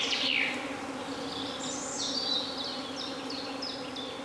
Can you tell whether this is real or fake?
real